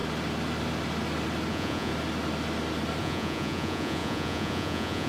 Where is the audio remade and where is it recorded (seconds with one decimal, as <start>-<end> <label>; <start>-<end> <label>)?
0.0-1.5 recorded; 1.5-1.9 remade; 1.9-3.0 recorded; 3.0-5.1 remade